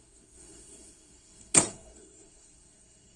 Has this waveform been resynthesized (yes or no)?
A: yes